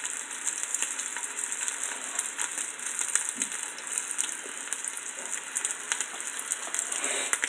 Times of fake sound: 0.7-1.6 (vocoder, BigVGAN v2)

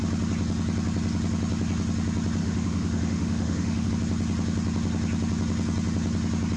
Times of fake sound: 2.4-3.9 (autoencoder, DAC-VAE)